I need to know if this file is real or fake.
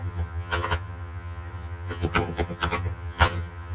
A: fake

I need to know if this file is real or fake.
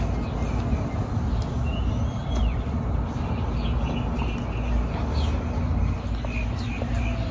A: real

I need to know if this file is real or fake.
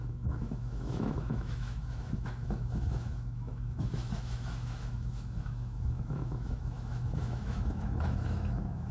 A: fake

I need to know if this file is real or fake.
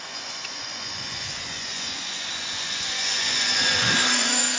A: fake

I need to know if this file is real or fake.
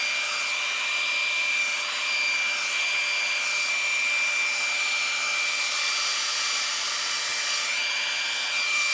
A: real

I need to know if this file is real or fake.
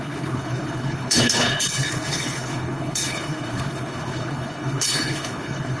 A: fake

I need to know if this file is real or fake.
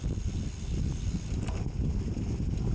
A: real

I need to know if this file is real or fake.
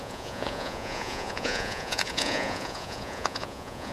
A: fake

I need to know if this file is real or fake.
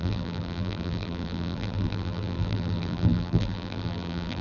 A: fake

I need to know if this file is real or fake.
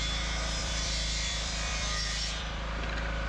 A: fake